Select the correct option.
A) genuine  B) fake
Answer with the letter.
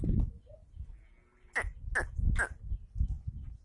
A